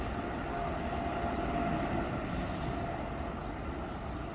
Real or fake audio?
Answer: real